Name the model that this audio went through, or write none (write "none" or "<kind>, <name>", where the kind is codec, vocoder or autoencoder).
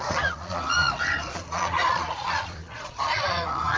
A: vocoder, Vocos